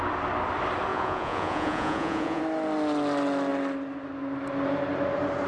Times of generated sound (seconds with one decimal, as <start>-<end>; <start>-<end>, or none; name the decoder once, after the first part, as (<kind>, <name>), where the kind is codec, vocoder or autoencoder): 0.9-2.4 (vocoder, Vocos)

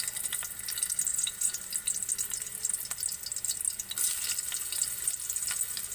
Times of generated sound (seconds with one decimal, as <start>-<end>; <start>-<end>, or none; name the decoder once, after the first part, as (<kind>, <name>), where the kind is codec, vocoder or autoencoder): 1.1-1.6 (vocoder, Vocos)

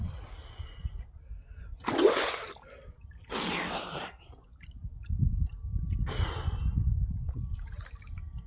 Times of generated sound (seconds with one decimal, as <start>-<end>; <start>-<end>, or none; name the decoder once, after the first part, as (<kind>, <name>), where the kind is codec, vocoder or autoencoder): 6.6-7.7 (vocoder, Vocos)

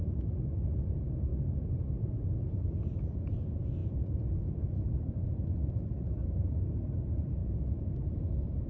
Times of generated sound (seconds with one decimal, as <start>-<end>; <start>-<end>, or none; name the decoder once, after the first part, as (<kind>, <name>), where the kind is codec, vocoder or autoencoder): 3.8-4.6 (vocoder, Vocos); 7.4-7.9

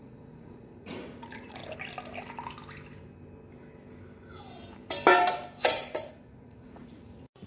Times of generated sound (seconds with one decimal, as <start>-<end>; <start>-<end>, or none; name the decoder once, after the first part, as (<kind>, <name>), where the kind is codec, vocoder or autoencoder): 0.0-1.6 (vocoder, Vocos); 6.1-7.5